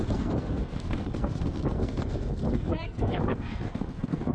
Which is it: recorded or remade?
remade